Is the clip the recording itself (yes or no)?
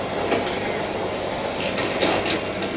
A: yes